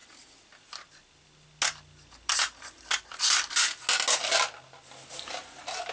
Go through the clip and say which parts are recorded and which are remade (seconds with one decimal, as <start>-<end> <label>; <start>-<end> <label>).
0.0-5.9 recorded